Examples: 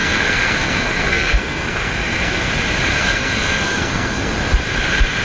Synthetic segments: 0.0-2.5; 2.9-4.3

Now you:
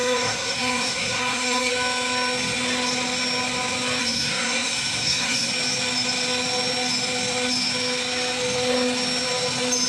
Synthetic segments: 0.0-1.7; 4.0-5.5

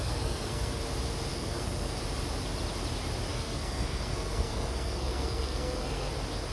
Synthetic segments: 0.0-0.8; 1.3-2.0; 3.3-6.1

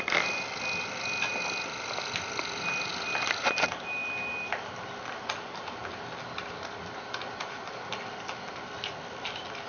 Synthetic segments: none